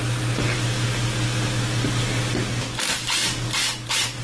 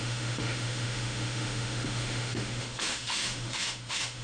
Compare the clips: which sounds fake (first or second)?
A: second